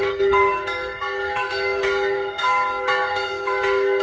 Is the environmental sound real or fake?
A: fake